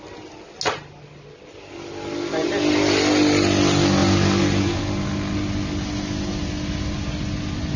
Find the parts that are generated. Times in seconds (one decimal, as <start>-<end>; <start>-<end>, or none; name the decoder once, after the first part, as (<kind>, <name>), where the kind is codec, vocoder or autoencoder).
none